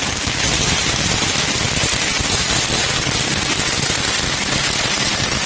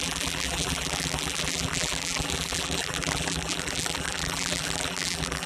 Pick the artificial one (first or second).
second